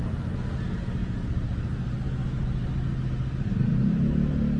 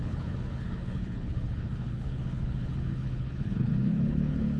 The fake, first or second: second